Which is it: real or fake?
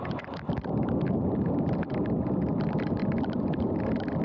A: fake